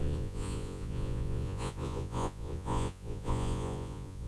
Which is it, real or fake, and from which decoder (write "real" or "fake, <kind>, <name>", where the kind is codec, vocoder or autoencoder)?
fake, vocoder, Vocos